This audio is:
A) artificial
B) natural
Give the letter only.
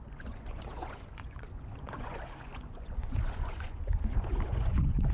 A